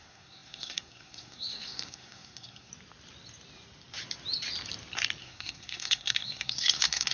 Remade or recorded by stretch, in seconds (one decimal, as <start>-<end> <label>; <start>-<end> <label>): 0.0-2.7 remade; 2.7-5.2 recorded; 5.2-7.1 remade